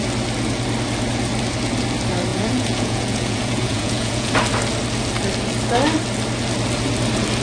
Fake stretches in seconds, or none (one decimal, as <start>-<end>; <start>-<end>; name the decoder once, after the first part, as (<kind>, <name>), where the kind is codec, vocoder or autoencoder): 2.3-4.3 (vocoder, Vocos)